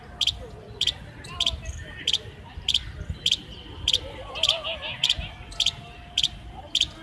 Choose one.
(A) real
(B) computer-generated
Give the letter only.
A